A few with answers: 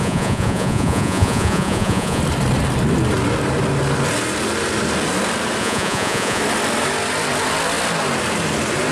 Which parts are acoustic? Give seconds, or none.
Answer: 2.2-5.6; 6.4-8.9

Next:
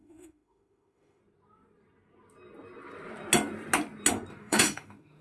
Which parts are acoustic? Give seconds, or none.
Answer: 1.2-4.3